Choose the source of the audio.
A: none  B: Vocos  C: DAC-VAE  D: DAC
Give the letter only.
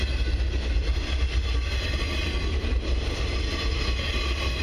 A